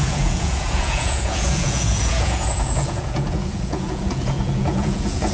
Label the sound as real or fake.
fake